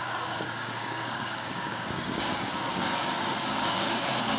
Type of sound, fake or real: fake